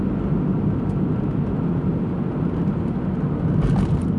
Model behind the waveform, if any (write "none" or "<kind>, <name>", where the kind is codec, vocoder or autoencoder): none